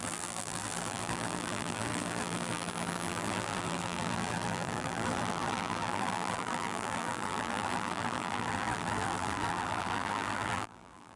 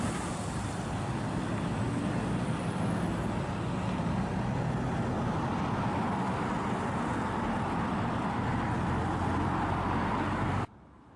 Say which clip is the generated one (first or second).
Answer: first